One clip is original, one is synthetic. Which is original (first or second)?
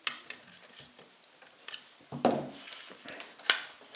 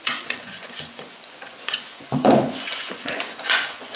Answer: first